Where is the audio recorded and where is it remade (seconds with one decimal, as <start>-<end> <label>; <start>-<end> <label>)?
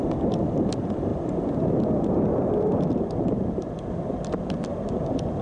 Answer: 0.0-5.4 recorded